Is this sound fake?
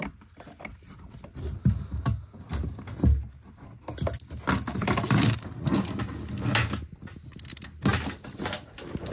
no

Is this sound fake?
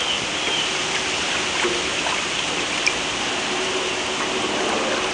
no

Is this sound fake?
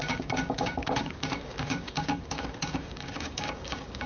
yes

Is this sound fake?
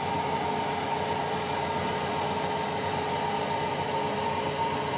no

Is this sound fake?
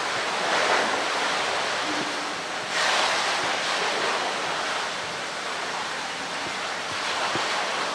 no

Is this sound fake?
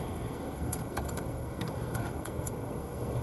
yes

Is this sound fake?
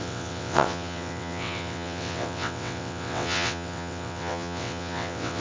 yes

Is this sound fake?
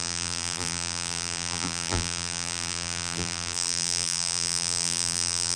yes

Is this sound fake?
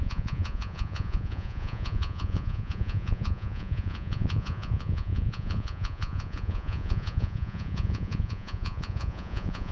yes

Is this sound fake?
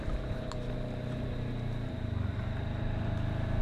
no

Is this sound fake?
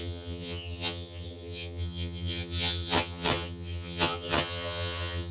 yes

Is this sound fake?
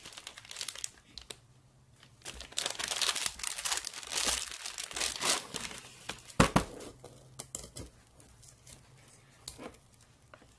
no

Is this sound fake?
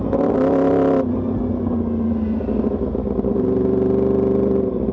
no